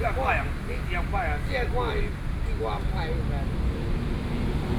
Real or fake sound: real